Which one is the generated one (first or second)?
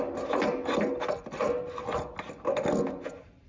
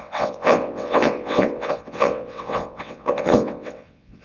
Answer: second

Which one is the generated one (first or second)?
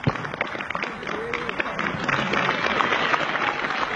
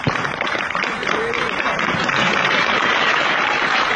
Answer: second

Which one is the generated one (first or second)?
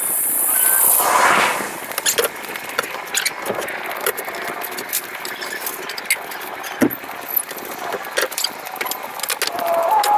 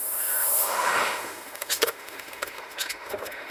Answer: second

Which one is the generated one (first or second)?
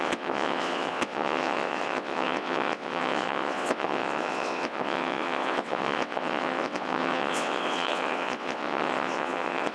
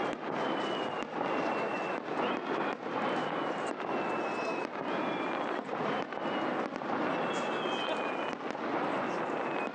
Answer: first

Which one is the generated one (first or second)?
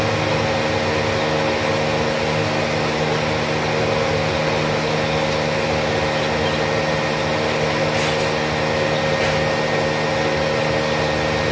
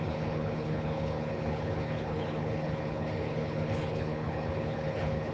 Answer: second